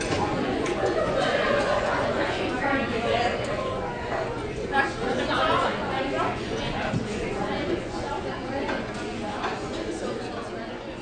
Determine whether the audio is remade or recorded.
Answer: remade